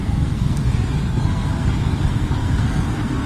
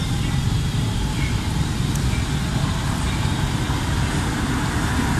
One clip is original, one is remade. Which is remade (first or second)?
first